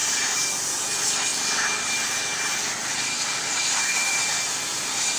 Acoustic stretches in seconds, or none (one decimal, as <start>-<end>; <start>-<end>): 0.0-1.3; 4.2-5.2